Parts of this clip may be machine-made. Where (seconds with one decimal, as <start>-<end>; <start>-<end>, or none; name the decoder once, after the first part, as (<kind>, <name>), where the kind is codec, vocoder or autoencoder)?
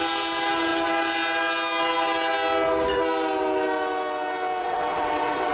4.6-5.5 (vocoder, WaveNeXt)